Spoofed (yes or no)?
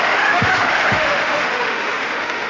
yes